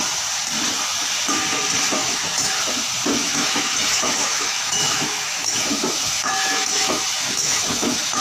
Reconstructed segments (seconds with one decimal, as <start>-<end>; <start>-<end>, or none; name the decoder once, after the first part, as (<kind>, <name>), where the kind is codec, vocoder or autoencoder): 2.0-2.5 (autoencoder, DAC-VAE); 3.2-8.2